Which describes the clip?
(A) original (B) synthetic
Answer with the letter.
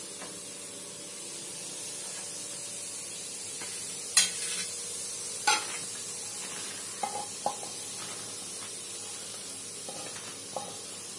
A